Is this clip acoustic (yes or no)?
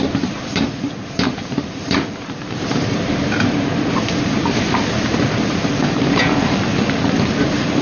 no